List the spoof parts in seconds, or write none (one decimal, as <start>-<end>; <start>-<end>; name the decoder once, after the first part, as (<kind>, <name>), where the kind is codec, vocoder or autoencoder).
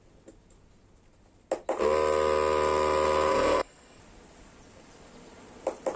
3.3-4.0 (codec, SNAC)